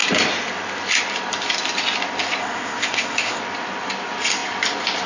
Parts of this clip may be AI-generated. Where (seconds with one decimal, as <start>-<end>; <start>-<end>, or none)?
2.4-3.4